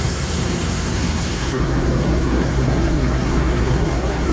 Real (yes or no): no